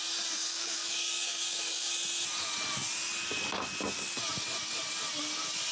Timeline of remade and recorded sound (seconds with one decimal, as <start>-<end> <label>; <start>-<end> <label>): 0.0-0.4 recorded; 0.4-1.9 remade; 1.9-5.7 recorded